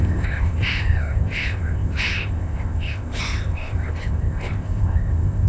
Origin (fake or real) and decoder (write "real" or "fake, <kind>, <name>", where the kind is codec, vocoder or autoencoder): fake, codec, ZipCodec